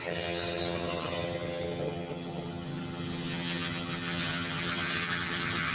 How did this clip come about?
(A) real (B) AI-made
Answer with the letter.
B